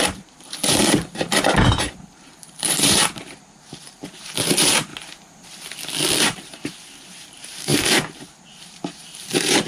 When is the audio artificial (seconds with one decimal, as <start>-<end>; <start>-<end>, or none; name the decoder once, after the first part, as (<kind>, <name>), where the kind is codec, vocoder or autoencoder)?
0.0-4.9 (vocoder, BigVGAN v2); 6.2-9.7